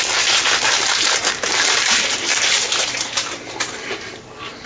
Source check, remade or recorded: remade